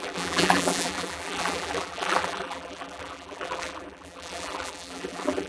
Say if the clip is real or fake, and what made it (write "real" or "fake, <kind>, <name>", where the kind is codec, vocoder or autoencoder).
fake, vocoder, BigVGAN v2